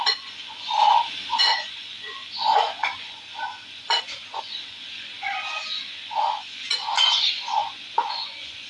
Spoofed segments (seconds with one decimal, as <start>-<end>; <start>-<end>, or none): 0.0-0.8; 1.4-8.7